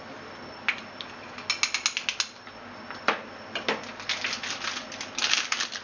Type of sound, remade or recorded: recorded